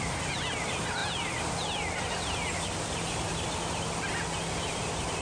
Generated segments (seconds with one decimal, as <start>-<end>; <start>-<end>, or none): none